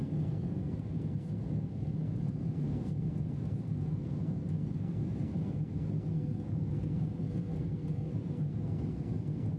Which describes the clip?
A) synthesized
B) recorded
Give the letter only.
A